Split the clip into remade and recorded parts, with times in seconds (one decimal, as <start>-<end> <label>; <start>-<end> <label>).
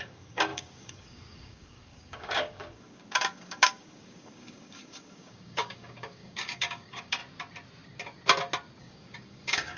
0.0-7.2 remade; 7.2-8.8 recorded; 8.8-9.8 remade